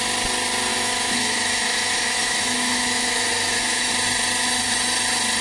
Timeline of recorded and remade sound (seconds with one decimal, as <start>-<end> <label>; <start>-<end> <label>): 0.0-0.7 recorded; 0.7-3.9 remade; 3.9-5.4 recorded